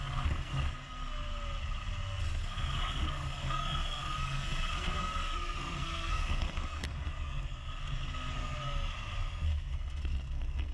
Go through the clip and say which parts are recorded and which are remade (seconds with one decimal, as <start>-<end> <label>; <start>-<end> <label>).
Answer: 0.0-1.3 remade; 1.3-2.4 recorded; 2.4-10.7 remade